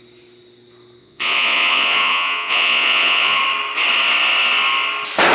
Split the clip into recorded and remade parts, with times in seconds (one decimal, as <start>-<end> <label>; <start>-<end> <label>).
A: 0.0-1.0 recorded; 1.0-3.4 remade; 3.4-5.3 recorded